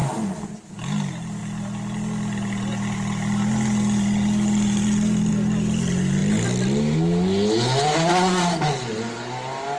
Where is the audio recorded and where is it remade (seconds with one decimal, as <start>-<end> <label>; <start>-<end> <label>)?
0.0-9.8 recorded